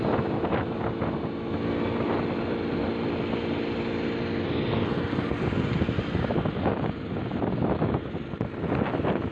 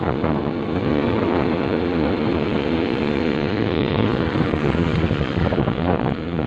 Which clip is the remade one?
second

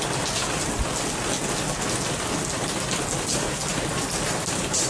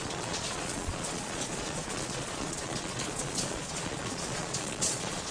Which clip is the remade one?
second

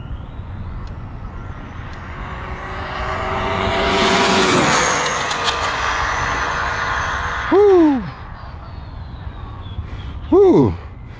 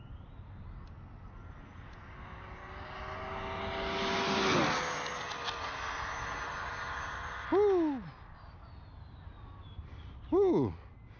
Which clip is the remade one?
first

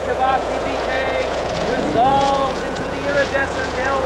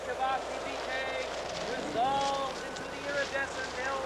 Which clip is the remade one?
first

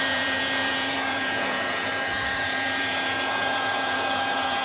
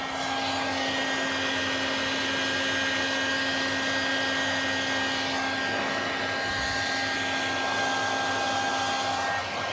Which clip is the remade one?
first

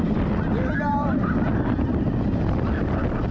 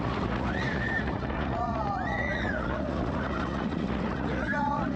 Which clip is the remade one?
second